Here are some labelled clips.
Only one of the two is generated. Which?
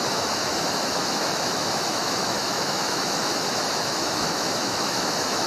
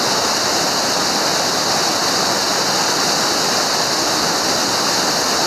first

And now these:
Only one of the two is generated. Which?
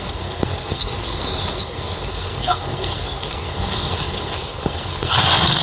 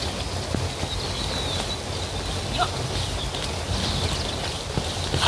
first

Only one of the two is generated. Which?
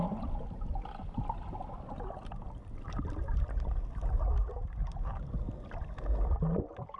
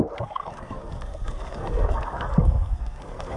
second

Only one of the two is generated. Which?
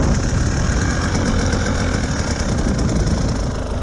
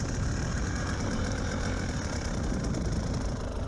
second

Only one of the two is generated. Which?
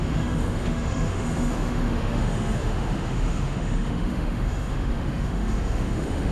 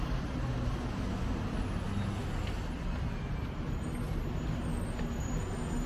first